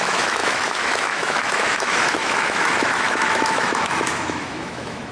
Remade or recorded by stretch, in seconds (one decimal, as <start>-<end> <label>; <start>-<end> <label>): 0.0-5.1 remade